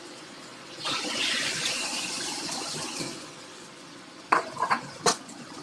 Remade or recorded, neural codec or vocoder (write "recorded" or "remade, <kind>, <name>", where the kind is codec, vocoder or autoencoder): remade, vocoder, Vocos